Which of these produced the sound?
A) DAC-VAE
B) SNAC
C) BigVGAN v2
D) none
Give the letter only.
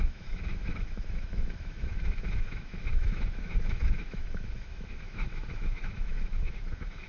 A